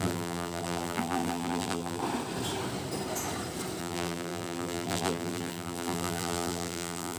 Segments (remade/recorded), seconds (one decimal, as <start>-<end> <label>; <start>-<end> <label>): 0.0-2.0 remade; 2.0-3.8 recorded; 3.8-7.2 remade